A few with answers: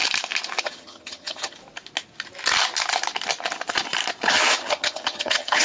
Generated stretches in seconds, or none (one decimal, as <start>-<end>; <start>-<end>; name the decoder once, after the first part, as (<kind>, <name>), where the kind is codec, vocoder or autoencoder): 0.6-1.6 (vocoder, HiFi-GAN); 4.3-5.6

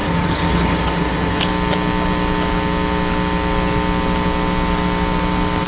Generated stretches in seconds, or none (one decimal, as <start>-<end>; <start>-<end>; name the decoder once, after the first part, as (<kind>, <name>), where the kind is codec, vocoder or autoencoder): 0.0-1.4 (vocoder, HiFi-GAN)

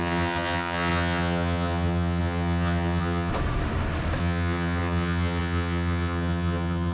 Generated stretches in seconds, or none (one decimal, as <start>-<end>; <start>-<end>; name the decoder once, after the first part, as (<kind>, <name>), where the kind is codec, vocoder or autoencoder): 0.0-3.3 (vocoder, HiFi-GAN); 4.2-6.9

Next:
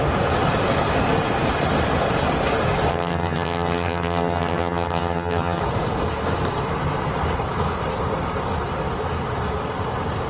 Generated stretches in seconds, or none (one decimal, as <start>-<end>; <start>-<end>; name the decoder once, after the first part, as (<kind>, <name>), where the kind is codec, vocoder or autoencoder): 2.9-5.6 (vocoder, HiFi-GAN)

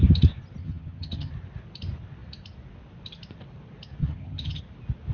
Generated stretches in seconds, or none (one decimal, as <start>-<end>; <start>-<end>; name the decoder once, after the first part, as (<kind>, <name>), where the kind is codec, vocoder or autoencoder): 0.6-1.3 (vocoder, HiFi-GAN); 4.0-4.6